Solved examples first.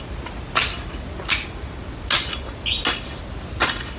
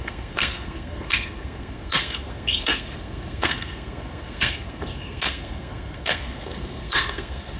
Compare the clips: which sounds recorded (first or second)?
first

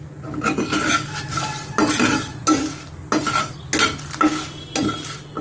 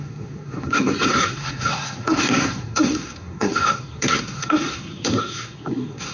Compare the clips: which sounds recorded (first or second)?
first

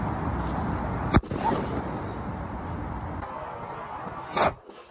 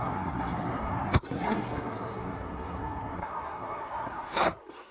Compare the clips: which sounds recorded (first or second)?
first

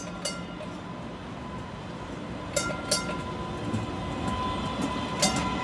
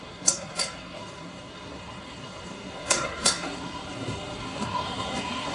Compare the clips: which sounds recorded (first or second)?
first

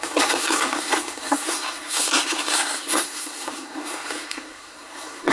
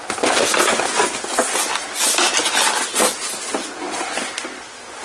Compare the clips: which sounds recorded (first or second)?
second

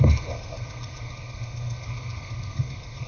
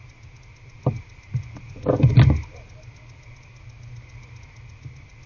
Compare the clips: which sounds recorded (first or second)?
second